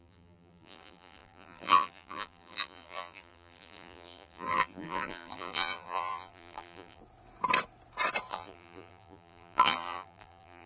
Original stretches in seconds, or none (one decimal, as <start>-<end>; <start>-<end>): 7.0-8.3

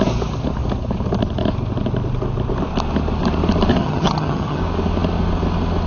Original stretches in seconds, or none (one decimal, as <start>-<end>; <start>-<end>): 0.0-3.7; 4.6-5.9

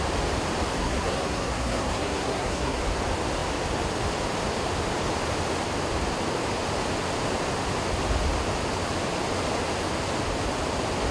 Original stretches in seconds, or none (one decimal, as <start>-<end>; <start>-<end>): 0.0-0.8; 2.8-11.1

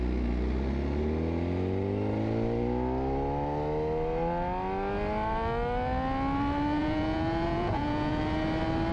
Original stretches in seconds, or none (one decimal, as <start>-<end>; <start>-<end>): 0.0-6.8; 8.2-8.9

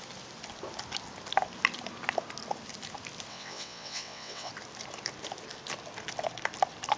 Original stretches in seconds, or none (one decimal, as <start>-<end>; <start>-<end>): 0.0-3.3; 4.5-7.0